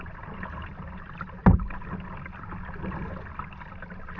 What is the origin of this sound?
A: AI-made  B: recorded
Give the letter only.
B